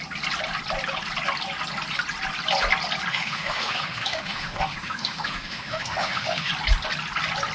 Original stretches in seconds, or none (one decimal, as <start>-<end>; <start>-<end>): 0.0-3.1; 6.5-7.5